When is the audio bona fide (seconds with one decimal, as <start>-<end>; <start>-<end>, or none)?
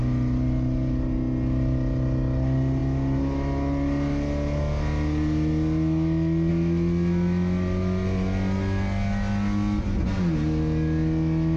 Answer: 0.0-11.6